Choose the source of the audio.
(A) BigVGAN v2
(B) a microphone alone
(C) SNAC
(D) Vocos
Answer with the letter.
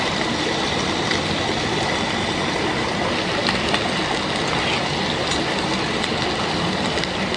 B